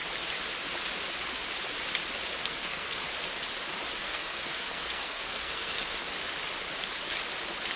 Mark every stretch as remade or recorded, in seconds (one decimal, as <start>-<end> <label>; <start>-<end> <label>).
0.0-2.4 recorded; 2.4-3.1 remade; 3.1-4.0 recorded; 4.0-6.0 remade; 6.0-7.8 recorded